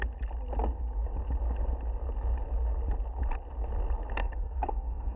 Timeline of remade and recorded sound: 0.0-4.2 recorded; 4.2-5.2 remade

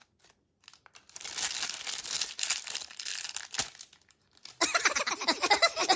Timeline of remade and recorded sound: 0.0-6.0 recorded